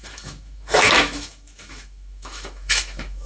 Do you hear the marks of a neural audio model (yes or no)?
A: yes